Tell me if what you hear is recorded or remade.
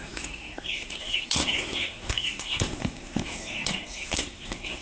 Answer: remade